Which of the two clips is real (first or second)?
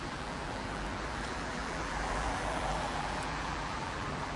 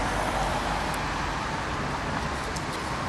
second